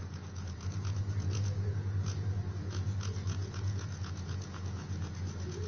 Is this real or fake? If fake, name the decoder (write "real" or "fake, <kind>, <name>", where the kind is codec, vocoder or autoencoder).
fake, vocoder, Vocos